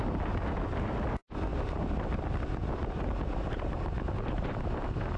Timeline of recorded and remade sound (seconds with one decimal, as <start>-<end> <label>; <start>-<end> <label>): 0.0-2.8 recorded; 2.8-4.6 remade; 4.6-5.2 recorded